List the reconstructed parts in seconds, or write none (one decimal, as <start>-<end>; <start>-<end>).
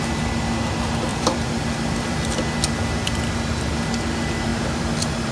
1.1-2.8; 4.5-5.3